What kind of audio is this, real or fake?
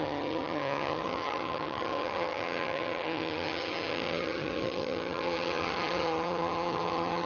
fake